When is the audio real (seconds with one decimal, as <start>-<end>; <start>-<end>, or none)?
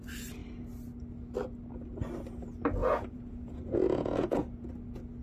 0.0-2.8; 4.7-5.2